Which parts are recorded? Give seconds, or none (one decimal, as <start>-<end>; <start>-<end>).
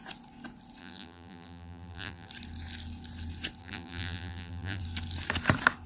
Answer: 0.0-0.8; 2.3-3.6; 4.8-5.9